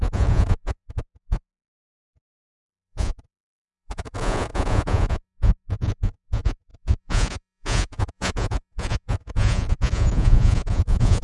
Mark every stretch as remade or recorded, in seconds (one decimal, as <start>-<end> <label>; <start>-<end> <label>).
0.0-11.2 remade